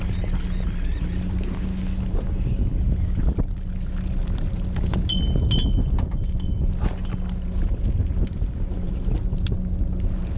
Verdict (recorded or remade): recorded